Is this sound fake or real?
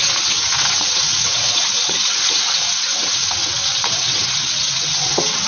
fake